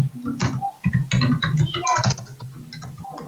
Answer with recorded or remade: recorded